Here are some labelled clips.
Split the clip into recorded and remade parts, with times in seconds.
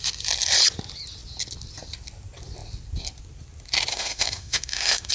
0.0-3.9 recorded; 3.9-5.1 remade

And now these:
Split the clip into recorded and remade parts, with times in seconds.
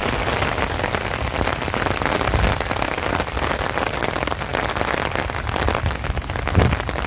0.0-7.1 recorded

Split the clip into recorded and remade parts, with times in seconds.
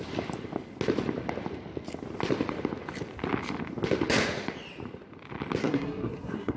0.0-5.6 recorded; 5.6-6.6 remade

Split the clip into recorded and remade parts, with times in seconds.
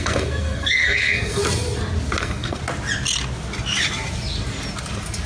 0.0-1.4 remade; 1.4-2.2 recorded; 2.2-2.6 remade; 2.6-5.3 recorded